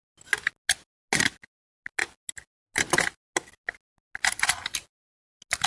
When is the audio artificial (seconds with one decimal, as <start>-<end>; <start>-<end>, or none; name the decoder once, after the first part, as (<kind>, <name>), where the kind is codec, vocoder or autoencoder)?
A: none